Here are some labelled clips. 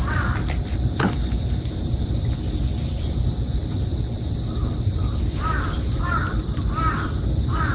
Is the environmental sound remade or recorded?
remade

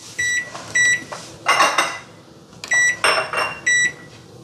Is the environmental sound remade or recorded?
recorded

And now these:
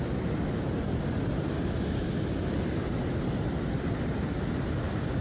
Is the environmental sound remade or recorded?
recorded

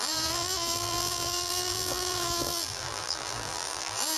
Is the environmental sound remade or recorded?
remade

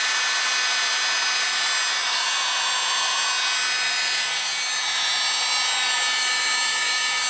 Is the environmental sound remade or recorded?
recorded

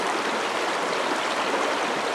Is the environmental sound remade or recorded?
recorded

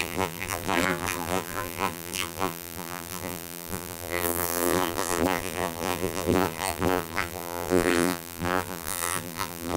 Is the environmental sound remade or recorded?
remade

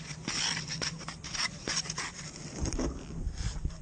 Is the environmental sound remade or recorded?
remade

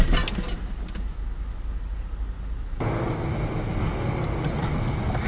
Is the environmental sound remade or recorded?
recorded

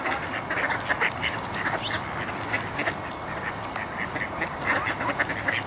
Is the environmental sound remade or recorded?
recorded